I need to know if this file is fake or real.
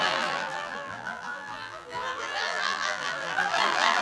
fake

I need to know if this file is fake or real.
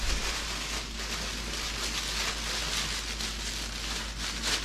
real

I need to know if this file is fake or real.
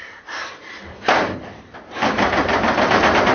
fake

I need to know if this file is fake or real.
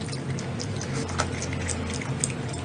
real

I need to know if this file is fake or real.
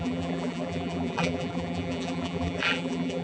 fake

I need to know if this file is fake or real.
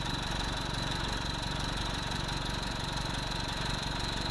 fake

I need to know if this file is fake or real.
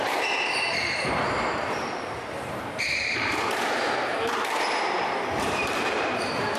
fake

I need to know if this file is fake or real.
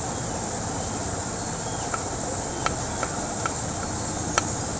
real